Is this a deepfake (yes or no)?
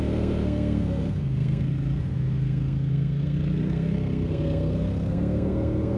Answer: yes